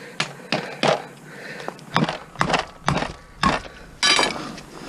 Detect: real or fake real